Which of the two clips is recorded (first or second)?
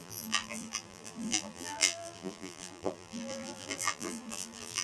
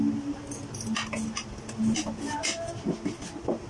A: second